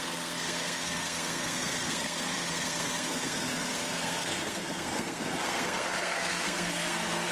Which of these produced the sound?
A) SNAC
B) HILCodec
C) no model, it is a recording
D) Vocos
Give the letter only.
A